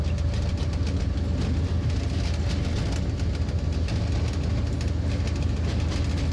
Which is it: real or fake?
real